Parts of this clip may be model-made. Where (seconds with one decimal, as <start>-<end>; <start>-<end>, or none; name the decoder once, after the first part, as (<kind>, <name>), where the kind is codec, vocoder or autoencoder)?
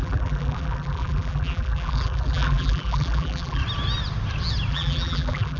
0.0-3.6 (vocoder, BigVGAN v2); 4.7-5.6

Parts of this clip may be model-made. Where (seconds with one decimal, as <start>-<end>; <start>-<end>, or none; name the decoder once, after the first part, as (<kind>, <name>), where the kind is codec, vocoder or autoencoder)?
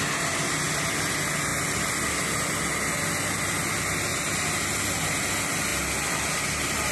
4.1-5.2 (vocoder, BigVGAN v2)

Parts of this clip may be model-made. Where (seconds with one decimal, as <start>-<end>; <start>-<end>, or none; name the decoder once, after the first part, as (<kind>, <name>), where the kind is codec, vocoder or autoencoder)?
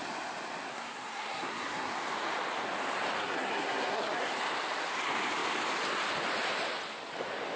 0.7-1.9 (codec, SNAC); 3.2-4.3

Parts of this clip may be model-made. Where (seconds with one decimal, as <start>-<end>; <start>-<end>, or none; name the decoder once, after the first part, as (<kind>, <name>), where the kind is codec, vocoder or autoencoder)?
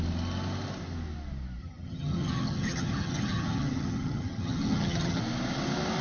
1.6-5.2 (vocoder, HiFi-GAN)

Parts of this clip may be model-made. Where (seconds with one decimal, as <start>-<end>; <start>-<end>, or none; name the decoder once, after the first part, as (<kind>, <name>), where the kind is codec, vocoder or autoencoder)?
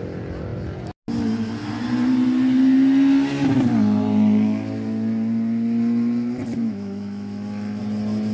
6.6-7.8 (autoencoder, DAC-VAE)